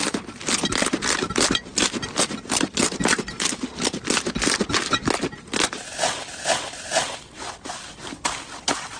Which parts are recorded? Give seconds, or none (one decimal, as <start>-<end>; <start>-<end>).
0.0-9.0